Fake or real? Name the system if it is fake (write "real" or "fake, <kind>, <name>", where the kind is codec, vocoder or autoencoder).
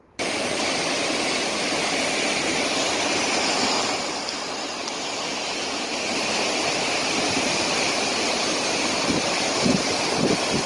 real